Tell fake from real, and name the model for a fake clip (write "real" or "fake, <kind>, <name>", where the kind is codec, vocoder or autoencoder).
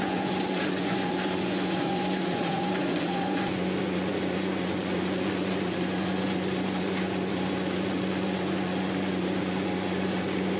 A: fake, vocoder, Vocos